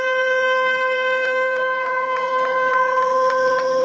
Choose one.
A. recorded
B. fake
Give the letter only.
B